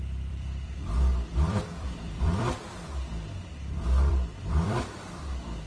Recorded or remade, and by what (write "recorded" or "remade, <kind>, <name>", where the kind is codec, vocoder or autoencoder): remade, vocoder, BigVGAN v2